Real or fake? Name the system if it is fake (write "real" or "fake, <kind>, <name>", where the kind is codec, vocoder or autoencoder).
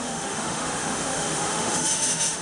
fake, autoencoder, DAC-VAE